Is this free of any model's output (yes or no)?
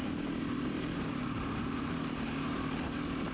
no